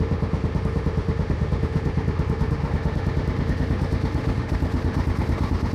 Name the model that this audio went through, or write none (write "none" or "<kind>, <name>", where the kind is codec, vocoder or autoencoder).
autoencoder, DAC-VAE